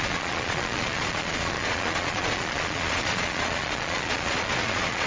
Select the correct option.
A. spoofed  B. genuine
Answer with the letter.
A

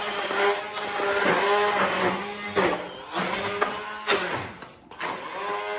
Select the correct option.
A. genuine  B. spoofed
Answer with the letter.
A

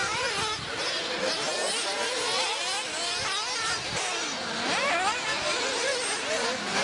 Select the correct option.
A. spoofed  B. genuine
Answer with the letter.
B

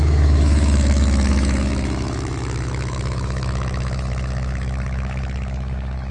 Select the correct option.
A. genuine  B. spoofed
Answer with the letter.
B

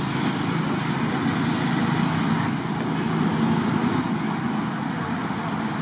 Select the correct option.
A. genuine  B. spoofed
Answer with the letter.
A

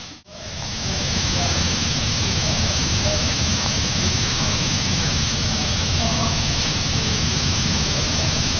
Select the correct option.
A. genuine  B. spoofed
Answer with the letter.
B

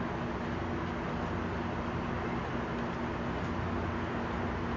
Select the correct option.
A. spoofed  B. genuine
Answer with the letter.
B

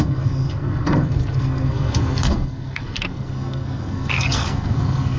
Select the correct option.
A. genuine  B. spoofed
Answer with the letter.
B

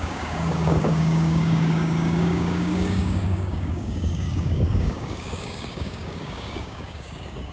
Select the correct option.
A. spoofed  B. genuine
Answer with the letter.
A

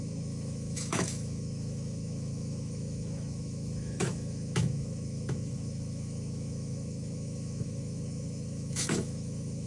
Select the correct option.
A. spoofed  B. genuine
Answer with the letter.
A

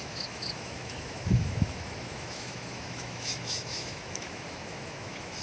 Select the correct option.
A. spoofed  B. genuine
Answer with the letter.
A